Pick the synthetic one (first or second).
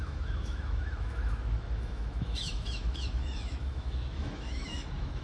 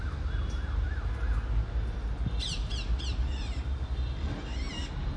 first